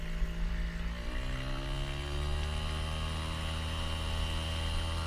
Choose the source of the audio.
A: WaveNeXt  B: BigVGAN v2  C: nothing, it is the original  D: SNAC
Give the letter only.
C